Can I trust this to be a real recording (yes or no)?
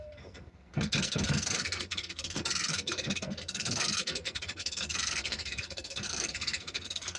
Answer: no